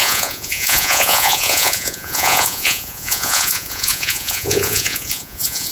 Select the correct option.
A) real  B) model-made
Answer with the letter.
B